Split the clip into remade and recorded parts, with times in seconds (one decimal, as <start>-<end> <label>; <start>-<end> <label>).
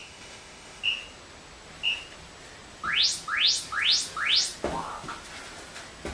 0.0-0.8 remade; 0.8-6.1 recorded